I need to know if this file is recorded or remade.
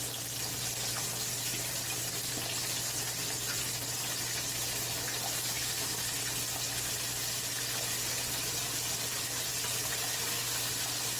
recorded